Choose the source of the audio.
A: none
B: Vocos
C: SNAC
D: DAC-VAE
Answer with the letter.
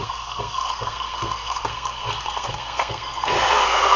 C